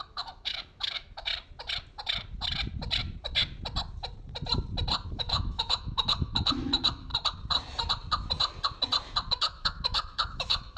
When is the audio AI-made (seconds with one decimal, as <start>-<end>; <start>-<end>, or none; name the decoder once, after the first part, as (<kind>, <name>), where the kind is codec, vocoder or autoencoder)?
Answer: 0.0-1.3 (autoencoder, DAC-VAE); 5.1-7.1; 9.3-10.8